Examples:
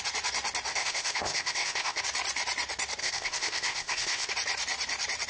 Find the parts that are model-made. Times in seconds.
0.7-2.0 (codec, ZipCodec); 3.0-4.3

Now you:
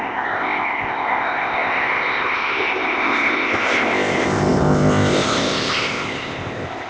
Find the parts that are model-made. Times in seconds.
0.0-6.9 (codec, ZipCodec)